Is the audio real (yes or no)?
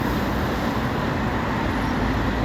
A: yes